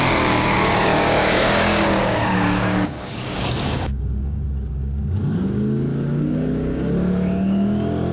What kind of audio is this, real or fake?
fake